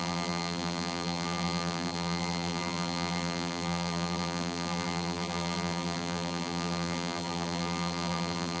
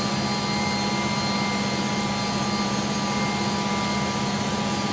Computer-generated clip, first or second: first